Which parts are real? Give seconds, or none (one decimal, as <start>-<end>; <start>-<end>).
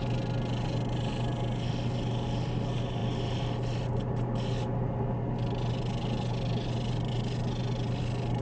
0.0-8.4